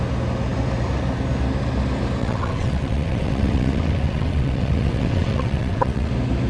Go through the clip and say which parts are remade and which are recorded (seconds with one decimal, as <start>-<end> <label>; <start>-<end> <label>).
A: 0.0-2.2 recorded; 2.2-6.1 remade; 6.1-6.5 recorded